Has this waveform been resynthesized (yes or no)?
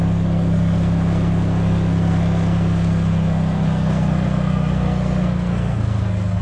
yes